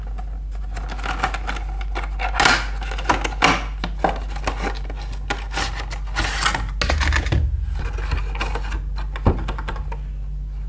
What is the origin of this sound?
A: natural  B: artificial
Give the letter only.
A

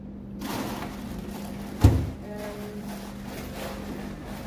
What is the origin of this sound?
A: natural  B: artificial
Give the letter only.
A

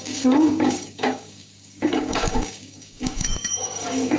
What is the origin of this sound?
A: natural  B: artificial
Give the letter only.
B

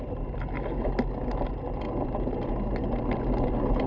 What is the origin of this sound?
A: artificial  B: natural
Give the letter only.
B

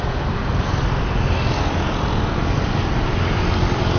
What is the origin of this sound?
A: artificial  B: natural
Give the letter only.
B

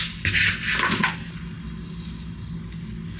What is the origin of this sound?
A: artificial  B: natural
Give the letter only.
B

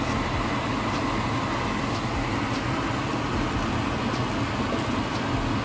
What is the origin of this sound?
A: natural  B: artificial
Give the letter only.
A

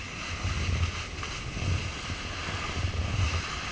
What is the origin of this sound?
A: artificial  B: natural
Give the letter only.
B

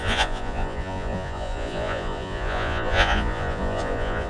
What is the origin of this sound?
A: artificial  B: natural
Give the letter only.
A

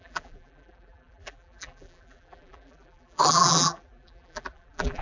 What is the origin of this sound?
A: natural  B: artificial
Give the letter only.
B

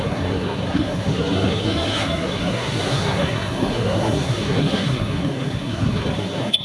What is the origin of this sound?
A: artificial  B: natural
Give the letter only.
A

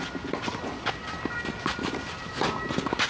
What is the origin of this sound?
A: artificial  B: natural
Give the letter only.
B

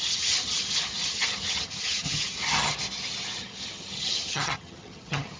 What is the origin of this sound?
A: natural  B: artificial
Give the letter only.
B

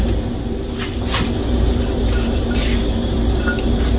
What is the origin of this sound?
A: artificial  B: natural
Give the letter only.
A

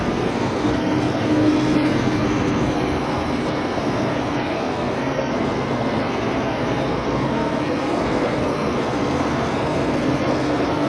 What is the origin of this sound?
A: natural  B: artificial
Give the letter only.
B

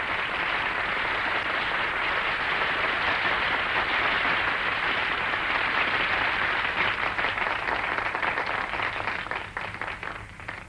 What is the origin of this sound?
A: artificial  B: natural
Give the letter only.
B